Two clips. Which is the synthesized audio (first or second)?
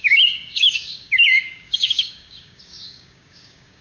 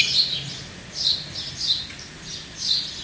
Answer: first